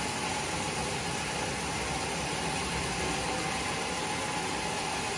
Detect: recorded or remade recorded